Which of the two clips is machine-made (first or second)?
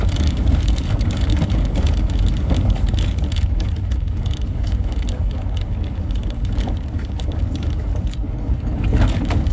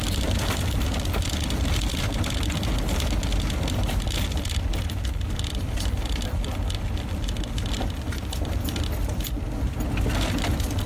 first